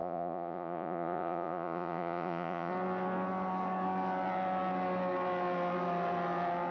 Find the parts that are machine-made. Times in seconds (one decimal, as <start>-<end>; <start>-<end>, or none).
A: 0.0-2.7